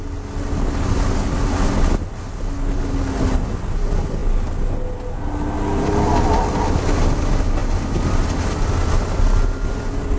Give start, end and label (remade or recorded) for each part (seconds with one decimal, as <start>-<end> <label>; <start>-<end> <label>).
0.0-10.2 recorded